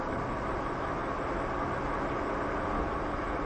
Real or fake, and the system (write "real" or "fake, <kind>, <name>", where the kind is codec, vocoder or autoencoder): real